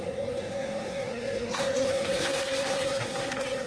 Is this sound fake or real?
fake